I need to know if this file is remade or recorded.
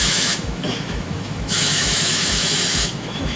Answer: remade